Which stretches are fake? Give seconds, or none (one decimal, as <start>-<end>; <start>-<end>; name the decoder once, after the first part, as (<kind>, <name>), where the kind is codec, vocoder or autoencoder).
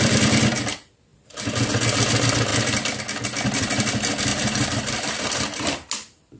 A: 4.3-5.9 (vocoder, BigVGAN v2)